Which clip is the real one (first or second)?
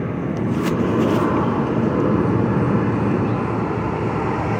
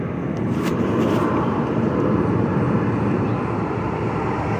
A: first